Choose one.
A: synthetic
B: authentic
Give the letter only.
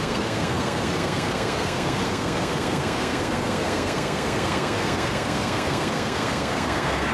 A